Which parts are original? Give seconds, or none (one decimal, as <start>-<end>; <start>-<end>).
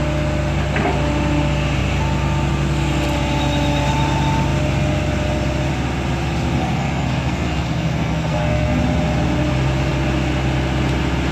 0.0-6.6; 8.8-11.3